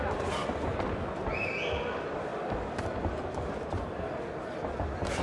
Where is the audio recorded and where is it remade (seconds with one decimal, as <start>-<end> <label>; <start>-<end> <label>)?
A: 0.0-0.4 remade; 0.4-1.2 recorded; 1.2-2.3 remade; 2.3-3.0 recorded; 3.0-5.2 remade